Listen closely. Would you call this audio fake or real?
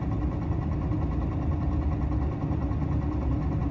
real